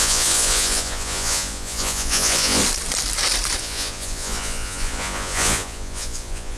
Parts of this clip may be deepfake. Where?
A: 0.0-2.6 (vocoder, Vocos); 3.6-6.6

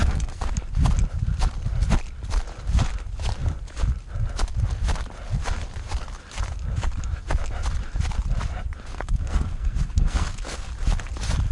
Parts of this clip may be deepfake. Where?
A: 0.0-0.5 (codec, SNAC); 8.9-10.7

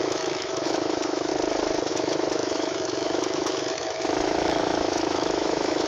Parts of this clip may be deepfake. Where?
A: 0.0-1.3 (autoencoder, DAC-VAE); 1.9-5.9